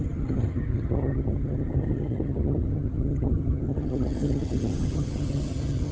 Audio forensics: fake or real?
fake